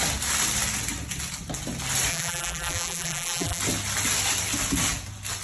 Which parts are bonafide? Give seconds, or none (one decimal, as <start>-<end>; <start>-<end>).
0.0-2.1; 3.6-5.4